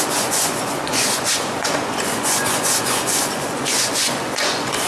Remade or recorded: remade